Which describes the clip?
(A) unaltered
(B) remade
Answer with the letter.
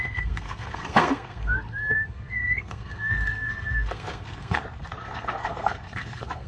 B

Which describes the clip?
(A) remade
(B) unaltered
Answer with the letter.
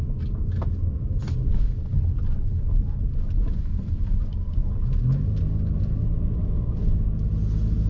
B